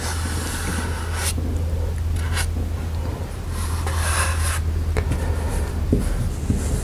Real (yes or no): yes